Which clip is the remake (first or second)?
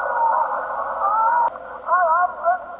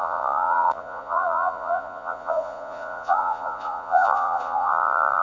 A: second